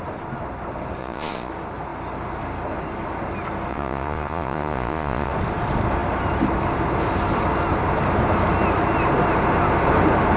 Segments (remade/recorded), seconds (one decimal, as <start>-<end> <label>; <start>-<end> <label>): 0.0-1.0 recorded; 1.0-1.5 remade; 1.5-3.7 recorded; 3.7-5.3 remade; 5.3-10.4 recorded